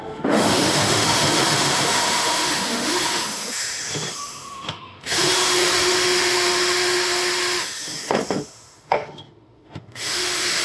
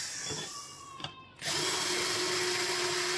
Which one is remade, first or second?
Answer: first